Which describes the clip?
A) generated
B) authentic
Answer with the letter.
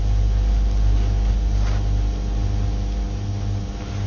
B